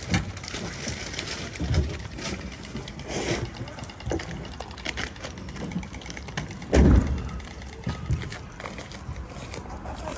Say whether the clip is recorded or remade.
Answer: recorded